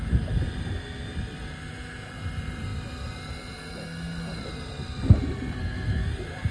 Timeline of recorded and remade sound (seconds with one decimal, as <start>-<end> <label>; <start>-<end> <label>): 0.0-0.7 remade; 0.7-6.5 recorded